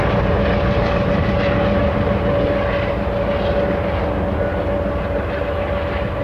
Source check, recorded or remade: recorded